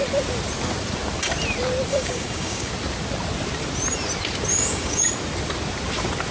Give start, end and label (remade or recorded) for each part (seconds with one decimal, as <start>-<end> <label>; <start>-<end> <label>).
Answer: 0.0-1.9 recorded; 1.9-2.7 remade; 2.7-4.5 recorded; 4.5-5.1 remade; 5.1-6.3 recorded